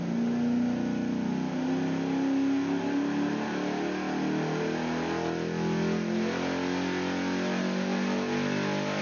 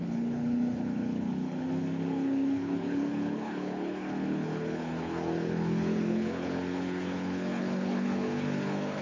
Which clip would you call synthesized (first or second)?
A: second